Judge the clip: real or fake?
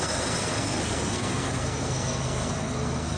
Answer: fake